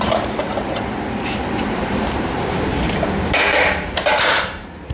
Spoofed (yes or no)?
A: yes